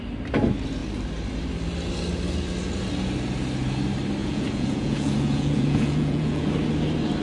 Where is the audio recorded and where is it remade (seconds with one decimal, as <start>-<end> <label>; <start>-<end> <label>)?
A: 0.0-4.2 recorded; 4.2-6.5 remade; 6.5-7.2 recorded